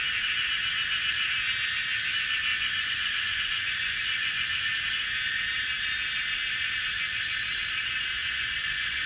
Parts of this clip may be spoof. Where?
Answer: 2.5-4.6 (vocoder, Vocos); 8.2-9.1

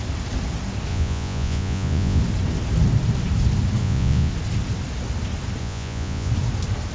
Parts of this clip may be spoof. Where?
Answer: 0.9-2.2 (vocoder, Vocos); 3.8-4.3; 5.6-6.3

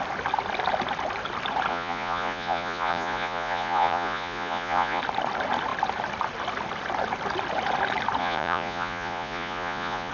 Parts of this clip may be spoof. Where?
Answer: 1.7-5.0 (vocoder, Vocos); 8.2-10.1

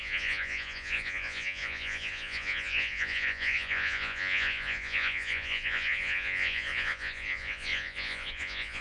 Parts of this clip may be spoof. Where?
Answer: 0.0-8.8 (vocoder, Vocos)

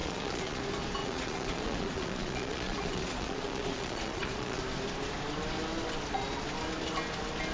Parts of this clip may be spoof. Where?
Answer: 0.0-0.6 (vocoder, Vocos); 1.0-4.6